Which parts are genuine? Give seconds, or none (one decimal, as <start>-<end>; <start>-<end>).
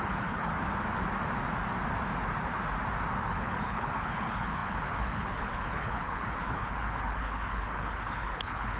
0.5-3.3